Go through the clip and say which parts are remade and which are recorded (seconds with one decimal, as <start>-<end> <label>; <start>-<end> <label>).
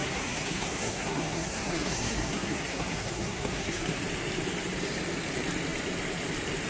0.0-4.0 remade; 4.0-6.7 recorded